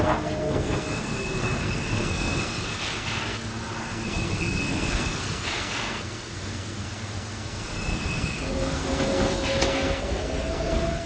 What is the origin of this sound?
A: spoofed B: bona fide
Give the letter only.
A